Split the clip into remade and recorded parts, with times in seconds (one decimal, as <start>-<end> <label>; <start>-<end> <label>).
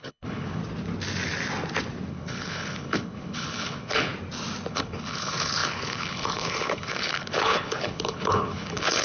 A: 0.0-0.6 remade; 0.6-2.1 recorded; 2.1-4.1 remade; 4.1-4.7 recorded; 4.7-9.0 remade